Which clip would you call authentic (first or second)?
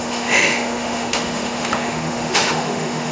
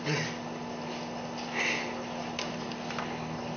second